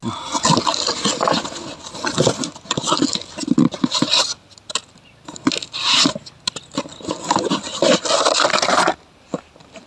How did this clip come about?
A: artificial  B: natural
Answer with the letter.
B